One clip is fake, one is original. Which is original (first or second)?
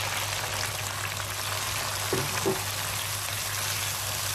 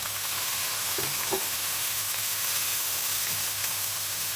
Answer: first